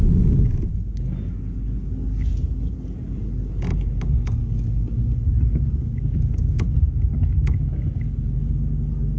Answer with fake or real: real